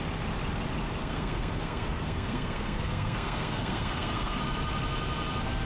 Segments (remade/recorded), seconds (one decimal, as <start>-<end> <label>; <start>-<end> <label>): 0.0-1.0 recorded; 1.0-4.4 remade; 4.4-5.7 recorded